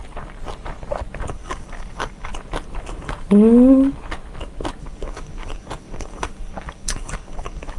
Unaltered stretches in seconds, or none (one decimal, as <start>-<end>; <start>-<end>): 0.0-1.3; 2.3-4.8